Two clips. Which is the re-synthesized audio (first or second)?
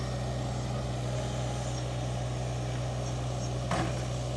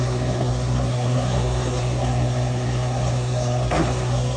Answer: second